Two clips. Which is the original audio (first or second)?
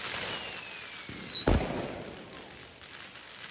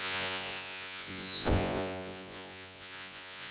first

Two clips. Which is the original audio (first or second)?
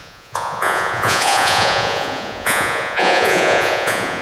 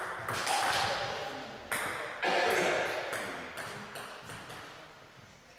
second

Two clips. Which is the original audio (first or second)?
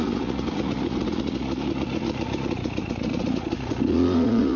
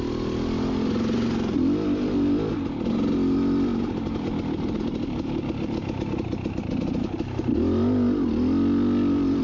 second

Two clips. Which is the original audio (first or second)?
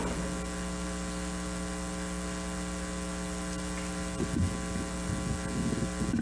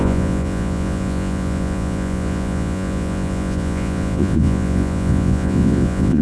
first